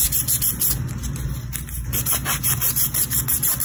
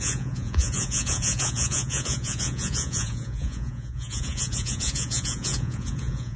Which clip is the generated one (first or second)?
second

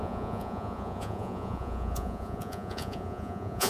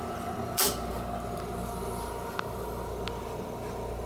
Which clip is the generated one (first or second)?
first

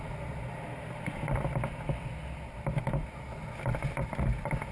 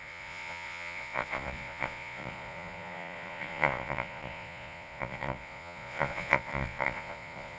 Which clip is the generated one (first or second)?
second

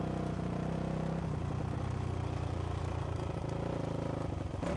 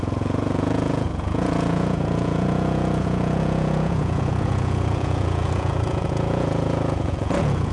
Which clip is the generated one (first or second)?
second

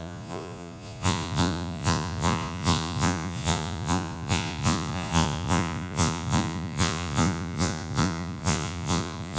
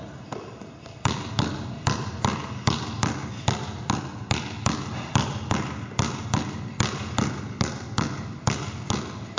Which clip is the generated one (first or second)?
first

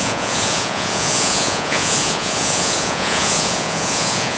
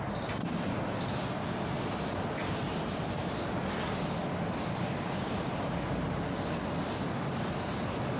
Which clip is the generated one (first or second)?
first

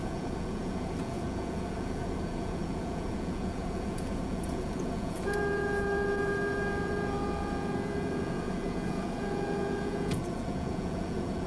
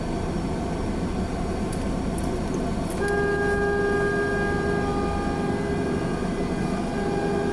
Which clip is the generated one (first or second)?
first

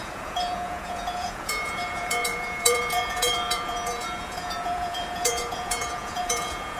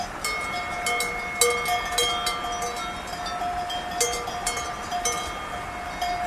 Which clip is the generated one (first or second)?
first